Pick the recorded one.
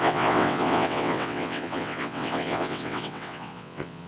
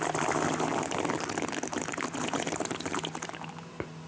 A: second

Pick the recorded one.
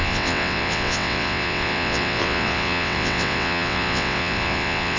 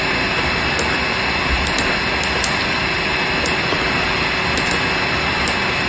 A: second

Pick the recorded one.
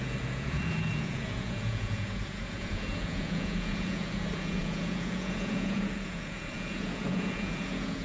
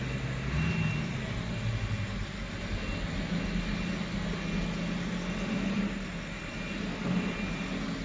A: second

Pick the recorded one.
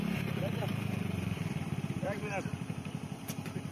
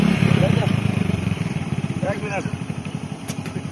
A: first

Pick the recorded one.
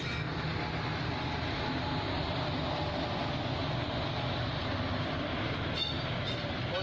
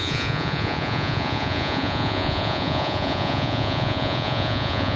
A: first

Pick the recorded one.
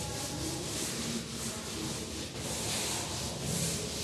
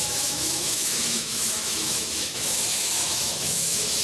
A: first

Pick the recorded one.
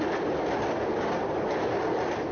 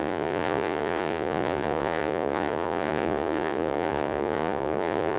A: first